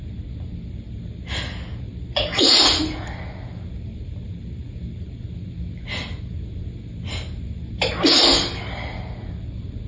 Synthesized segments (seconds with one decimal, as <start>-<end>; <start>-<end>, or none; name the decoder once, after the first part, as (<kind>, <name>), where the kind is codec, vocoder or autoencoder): none